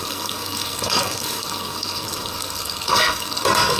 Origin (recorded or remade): remade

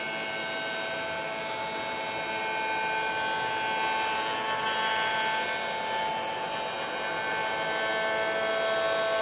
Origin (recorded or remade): recorded